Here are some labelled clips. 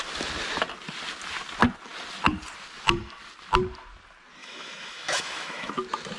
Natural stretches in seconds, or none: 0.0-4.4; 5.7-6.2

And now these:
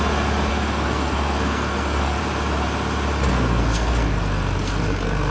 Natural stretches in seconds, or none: 0.0-0.5; 2.2-3.3

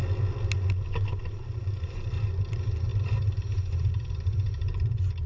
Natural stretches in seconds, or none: 0.0-0.9

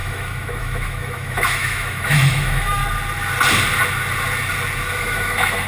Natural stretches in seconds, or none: 2.8-5.0

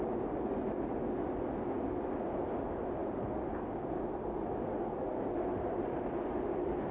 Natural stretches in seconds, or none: 0.0-6.9

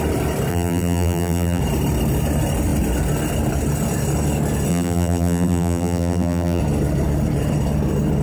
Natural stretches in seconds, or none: 0.0-0.5; 1.6-4.7; 6.6-8.2

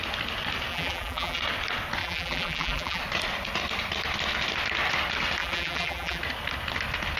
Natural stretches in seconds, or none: 0.0-0.7; 1.4-2.0; 3.0-5.4; 6.2-7.2